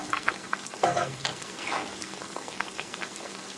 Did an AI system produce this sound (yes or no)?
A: yes